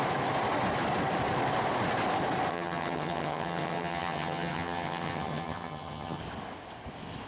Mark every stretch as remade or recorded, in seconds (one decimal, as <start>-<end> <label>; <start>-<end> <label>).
0.0-2.5 recorded; 2.5-6.2 remade; 6.2-7.3 recorded